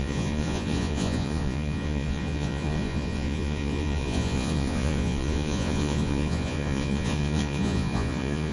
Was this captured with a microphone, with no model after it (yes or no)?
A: no